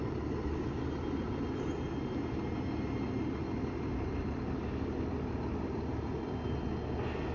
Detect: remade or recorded recorded